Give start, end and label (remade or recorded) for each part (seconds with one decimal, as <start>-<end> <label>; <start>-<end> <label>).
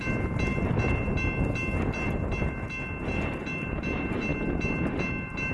0.0-5.5 recorded